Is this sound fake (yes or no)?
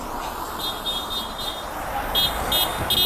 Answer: no